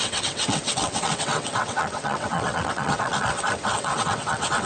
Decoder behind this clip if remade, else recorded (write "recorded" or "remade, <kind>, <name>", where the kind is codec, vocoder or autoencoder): remade, vocoder, WaveNeXt